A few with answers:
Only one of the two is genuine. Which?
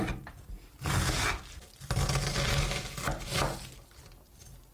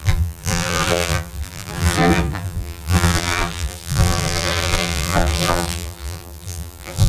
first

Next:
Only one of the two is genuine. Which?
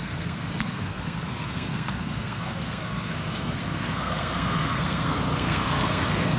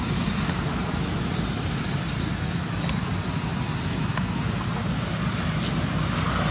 second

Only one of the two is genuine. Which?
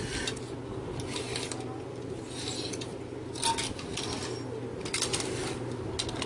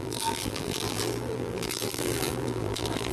first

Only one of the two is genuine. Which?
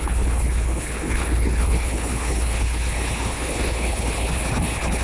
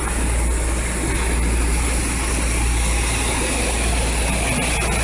second